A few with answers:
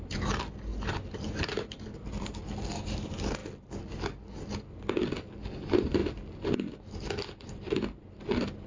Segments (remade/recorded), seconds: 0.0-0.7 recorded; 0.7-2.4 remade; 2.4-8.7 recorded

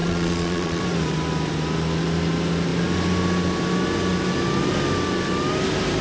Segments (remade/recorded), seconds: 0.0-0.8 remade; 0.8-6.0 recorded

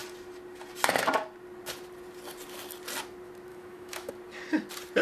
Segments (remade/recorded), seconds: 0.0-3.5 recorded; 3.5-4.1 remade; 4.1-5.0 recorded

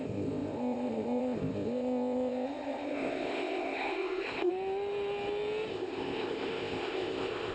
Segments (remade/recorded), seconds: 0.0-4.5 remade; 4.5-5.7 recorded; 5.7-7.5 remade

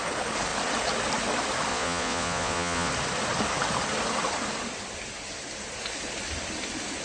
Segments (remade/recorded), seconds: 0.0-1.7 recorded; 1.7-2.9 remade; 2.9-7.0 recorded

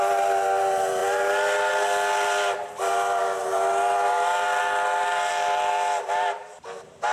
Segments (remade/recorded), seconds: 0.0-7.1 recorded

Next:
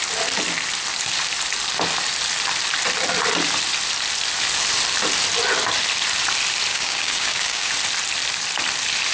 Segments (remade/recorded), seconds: 0.0-6.7 recorded; 6.7-7.7 remade; 7.7-9.1 recorded